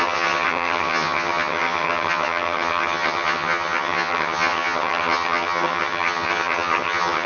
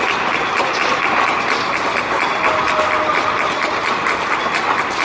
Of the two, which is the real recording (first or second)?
second